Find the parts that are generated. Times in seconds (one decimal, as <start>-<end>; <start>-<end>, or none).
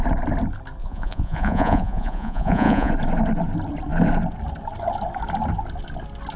0.8-2.9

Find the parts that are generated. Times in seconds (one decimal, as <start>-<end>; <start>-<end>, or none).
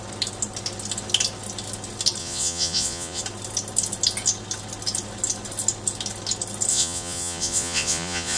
2.2-3.2; 6.7-8.4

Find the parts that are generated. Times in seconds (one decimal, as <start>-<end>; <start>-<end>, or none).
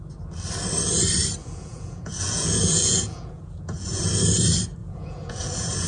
1.4-4.0; 4.8-5.9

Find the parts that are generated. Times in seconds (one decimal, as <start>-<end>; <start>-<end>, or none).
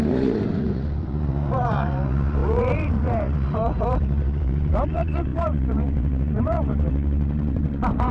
0.0-8.1